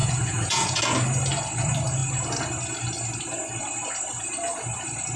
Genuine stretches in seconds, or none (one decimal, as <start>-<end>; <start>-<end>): 0.8-5.2